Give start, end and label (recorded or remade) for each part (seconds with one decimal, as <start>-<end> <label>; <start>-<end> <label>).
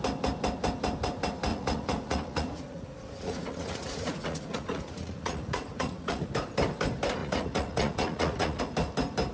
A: 0.0-1.5 recorded; 1.5-6.3 remade; 6.3-7.2 recorded; 7.2-8.6 remade; 8.6-9.3 recorded